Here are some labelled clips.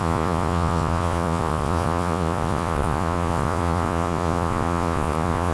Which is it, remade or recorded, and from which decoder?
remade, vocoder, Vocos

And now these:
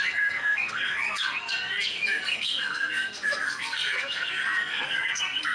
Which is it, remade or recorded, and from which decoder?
remade, codec, SNAC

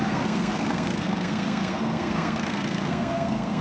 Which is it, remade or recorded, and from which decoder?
remade, codec, SNAC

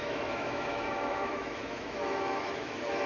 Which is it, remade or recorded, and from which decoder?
remade, autoencoder, DAC-VAE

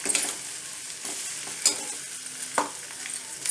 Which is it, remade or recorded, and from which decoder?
recorded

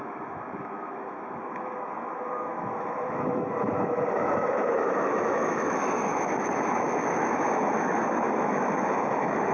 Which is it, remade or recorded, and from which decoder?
remade, autoencoder, DAC-VAE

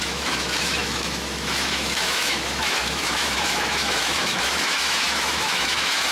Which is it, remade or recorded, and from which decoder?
remade, autoencoder, DAC-VAE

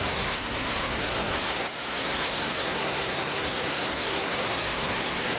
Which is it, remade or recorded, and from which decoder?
remade, codec, SNAC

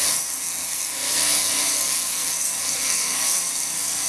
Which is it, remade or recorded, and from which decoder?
remade, codec, SNAC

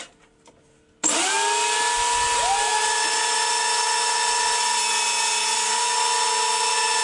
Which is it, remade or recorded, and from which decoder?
recorded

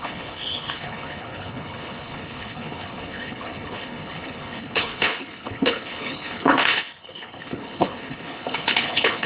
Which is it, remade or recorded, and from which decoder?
remade, codec, HILCodec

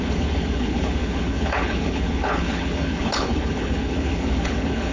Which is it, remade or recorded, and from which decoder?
remade, codec, HILCodec